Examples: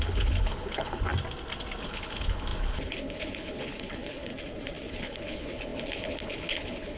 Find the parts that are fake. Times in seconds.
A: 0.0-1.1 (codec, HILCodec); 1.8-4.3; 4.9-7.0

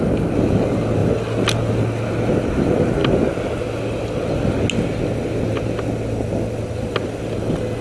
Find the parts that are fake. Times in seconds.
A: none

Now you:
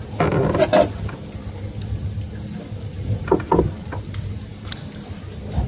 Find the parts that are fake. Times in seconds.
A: none

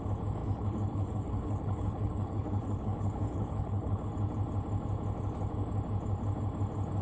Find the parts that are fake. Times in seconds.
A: 0.4-4.1 (codec, HILCodec)

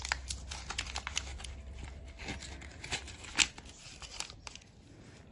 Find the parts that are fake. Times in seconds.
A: none